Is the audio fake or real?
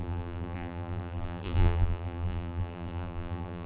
fake